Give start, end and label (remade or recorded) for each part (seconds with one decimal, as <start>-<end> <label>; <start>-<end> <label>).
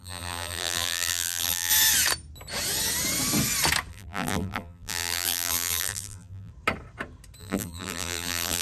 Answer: 0.0-1.7 remade; 1.7-3.9 recorded; 3.9-6.5 remade; 6.5-7.4 recorded; 7.4-8.6 remade